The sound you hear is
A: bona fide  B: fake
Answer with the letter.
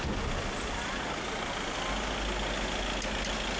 A